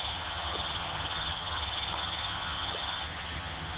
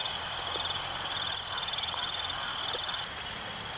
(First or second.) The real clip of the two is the second